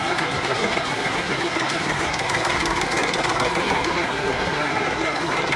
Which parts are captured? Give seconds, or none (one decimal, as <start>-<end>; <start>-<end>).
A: none